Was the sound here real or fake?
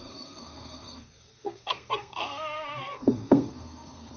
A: fake